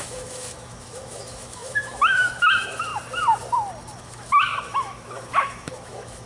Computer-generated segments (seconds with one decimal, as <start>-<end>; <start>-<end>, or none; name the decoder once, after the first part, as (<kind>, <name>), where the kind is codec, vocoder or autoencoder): 0.0-2.9 (autoencoder, DAC-VAE); 4.0-6.3